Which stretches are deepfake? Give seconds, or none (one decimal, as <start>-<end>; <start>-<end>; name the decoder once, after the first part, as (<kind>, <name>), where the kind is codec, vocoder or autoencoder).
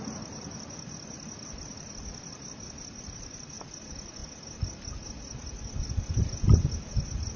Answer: none